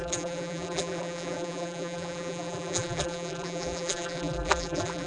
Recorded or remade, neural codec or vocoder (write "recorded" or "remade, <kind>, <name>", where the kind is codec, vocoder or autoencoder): remade, vocoder, BigVGAN v2